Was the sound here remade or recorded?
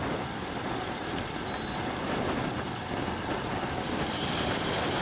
recorded